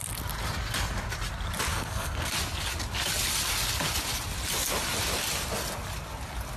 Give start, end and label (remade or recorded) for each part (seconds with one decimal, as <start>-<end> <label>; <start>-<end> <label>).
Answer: 0.0-1.7 recorded; 1.7-2.3 remade; 2.3-6.6 recorded